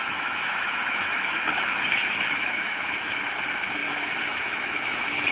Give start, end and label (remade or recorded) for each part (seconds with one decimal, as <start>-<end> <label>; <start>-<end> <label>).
0.0-3.2 remade; 3.2-3.8 recorded; 3.8-5.3 remade